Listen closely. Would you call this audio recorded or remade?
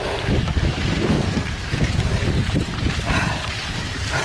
remade